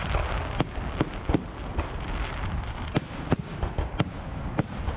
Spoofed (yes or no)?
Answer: no